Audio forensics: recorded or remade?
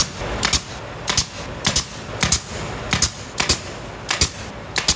recorded